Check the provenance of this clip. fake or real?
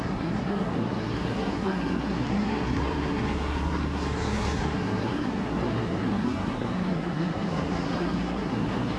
fake